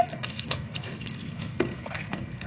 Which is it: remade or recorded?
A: remade